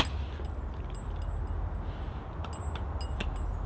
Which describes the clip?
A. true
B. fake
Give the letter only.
A